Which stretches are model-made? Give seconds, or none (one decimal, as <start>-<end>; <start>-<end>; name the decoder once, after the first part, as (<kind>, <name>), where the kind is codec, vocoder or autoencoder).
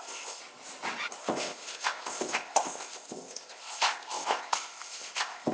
0.0-0.4 (codec, ZipCodec); 1.2-5.5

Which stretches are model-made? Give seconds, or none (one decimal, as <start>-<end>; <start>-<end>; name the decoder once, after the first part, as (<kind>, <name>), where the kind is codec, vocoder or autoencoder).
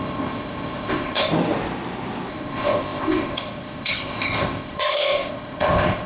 0.0-1.3 (codec, ZipCodec); 2.3-6.1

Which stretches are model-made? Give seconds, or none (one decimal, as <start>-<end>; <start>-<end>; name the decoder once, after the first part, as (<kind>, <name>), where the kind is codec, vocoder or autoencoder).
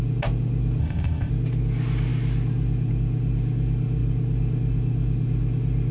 0.8-1.3 (codec, ZipCodec)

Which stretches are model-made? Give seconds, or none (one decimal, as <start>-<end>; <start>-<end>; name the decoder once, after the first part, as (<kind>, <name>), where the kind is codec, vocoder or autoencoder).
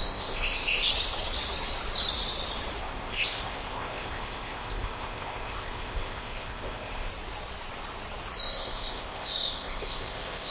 0.0-0.9 (codec, ZipCodec); 2.8-7.1; 8.4-10.5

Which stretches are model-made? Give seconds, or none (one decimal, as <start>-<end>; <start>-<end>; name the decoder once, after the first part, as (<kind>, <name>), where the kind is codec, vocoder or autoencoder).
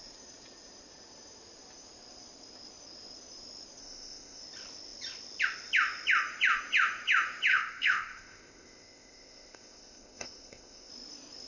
3.8-4.4 (codec, ZipCodec); 7.5-10.9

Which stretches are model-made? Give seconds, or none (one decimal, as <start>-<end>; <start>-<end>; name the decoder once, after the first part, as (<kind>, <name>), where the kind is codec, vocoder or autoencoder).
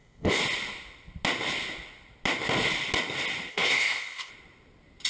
0.0-0.4 (codec, ZipCodec); 3.5-4.3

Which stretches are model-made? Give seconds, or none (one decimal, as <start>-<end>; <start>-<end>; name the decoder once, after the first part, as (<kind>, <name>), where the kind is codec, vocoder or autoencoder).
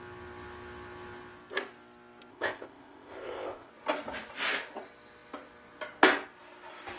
2.3-3.7 (codec, ZipCodec)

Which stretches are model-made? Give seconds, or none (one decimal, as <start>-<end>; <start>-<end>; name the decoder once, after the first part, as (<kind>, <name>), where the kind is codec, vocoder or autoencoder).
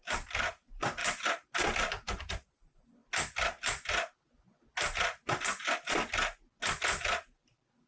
none